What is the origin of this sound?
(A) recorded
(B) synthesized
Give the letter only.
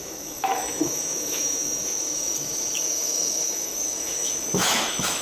B